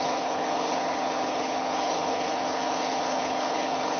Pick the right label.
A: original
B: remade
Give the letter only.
B